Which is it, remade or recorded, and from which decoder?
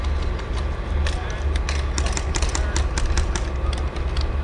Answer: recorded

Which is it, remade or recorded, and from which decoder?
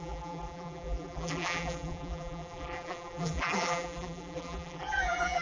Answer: remade, vocoder, BigVGAN v2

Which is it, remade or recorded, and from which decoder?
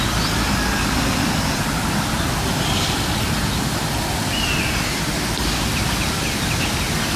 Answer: recorded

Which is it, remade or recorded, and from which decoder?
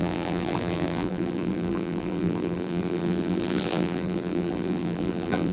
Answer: remade, vocoder, BigVGAN v2